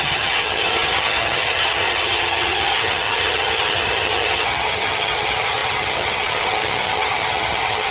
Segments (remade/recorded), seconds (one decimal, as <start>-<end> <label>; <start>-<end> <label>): 0.0-7.9 remade